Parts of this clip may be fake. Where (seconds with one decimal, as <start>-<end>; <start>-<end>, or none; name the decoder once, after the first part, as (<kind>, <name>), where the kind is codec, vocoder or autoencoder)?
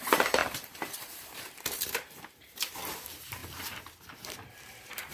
0.0-5.1 (vocoder, BigVGAN v2)